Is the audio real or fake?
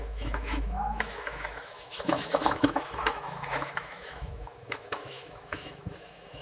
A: fake